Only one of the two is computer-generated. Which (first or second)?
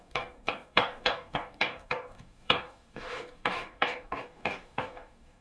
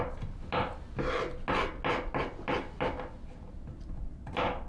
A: first